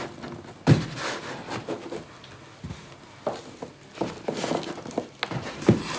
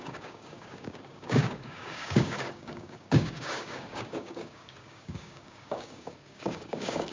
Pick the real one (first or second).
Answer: first